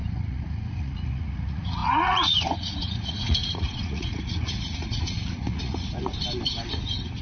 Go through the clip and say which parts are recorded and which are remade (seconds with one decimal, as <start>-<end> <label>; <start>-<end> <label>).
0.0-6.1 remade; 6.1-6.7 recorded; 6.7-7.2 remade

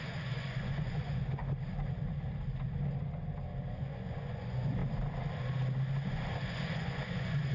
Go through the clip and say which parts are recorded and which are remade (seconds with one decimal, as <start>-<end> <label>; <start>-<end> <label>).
0.0-1.4 remade; 1.4-3.7 recorded; 3.7-4.8 remade; 4.8-6.1 recorded; 6.1-7.5 remade

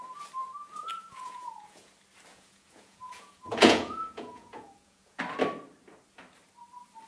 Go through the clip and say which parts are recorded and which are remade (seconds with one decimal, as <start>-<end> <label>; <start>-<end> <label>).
0.0-1.0 recorded; 1.0-1.9 remade; 1.9-2.3 recorded; 2.3-5.2 remade; 5.2-7.1 recorded